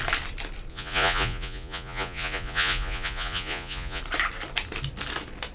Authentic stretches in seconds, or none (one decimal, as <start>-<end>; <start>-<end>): 0.0-0.7; 4.0-5.5